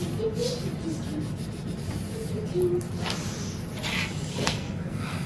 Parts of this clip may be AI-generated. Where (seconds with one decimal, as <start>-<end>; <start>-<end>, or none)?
4.3-5.3